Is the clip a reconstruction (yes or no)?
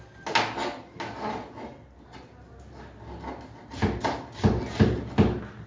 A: no